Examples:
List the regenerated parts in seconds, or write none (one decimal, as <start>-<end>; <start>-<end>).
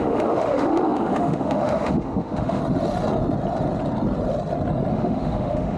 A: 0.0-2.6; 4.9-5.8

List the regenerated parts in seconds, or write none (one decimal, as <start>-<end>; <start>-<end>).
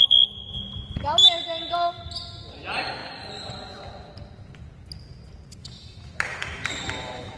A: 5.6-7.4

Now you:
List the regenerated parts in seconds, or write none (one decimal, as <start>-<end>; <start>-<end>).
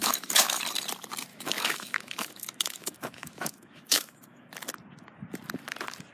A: 0.0-0.6; 1.3-4.5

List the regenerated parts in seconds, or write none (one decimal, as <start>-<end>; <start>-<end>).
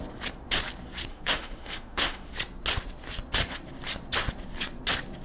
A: 1.1-2.3